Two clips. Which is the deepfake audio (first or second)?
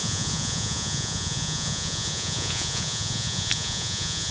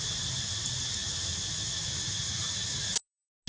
first